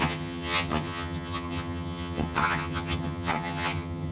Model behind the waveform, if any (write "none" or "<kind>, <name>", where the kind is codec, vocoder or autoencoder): vocoder, HiFi-GAN